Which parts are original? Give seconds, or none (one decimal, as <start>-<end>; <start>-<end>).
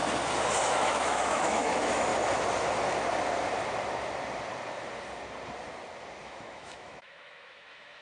0.0-0.6; 2.1-6.2